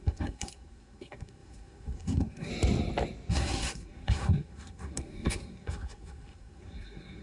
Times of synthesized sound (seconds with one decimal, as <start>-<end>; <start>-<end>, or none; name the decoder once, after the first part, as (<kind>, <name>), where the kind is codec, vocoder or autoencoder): 0.0-2.5 (codec, SNAC); 3.3-7.2